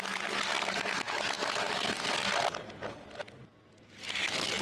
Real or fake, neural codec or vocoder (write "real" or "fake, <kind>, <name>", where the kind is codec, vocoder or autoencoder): real